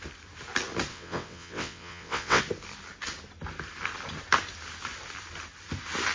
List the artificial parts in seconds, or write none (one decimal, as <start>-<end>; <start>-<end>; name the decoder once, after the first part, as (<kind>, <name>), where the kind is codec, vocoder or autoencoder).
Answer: 0.9-2.4 (vocoder, WaveNeXt)